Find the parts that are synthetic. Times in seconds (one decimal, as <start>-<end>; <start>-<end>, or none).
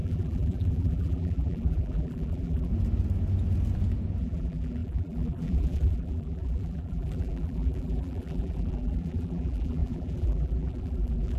0.0-2.7; 4.2-11.4